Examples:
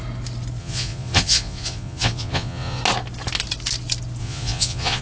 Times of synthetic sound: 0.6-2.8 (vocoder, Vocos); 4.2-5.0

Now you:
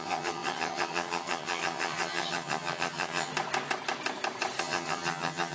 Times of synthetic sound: 0.0-3.3 (vocoder, HiFi-GAN); 4.6-5.5